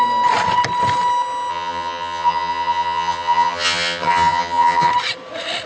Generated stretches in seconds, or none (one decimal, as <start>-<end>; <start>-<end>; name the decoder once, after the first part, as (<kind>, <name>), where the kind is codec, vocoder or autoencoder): 1.5-4.9 (vocoder, HiFi-GAN)

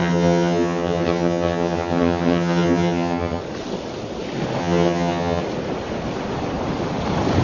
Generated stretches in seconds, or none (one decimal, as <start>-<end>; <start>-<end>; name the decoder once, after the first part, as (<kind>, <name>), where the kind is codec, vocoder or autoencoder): 0.0-3.4 (vocoder, HiFi-GAN); 4.6-5.4

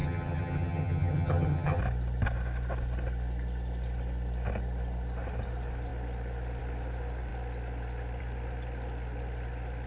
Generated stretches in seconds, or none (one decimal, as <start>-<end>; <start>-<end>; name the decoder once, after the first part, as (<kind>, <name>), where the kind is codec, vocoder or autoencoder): 0.0-1.8 (vocoder, HiFi-GAN)

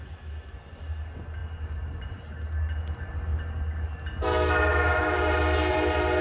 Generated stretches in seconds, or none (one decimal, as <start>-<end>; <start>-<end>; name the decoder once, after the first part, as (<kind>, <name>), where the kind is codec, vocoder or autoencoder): none

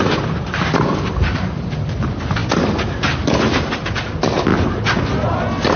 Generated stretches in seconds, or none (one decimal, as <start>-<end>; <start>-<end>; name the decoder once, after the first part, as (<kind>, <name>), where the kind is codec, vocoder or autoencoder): none

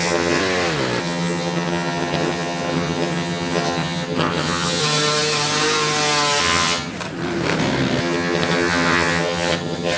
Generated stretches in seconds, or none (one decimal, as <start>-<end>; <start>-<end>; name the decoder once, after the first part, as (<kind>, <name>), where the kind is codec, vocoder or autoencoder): 0.0-0.4 (vocoder, HiFi-GAN); 1.0-4.8; 6.4-6.9; 8.0-10.0

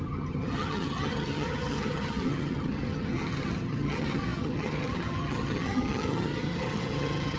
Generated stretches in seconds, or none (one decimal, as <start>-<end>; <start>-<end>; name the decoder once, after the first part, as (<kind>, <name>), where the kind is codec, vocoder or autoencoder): 0.0-7.4 (vocoder, HiFi-GAN)

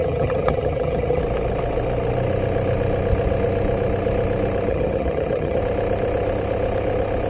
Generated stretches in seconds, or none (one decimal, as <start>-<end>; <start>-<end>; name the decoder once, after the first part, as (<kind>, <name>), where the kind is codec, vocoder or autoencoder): 0.0-1.2 (vocoder, HiFi-GAN); 4.7-5.6